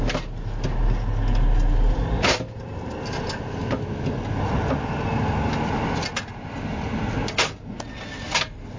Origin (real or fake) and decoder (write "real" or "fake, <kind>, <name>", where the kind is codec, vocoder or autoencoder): real